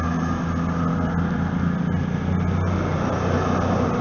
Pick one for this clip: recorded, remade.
recorded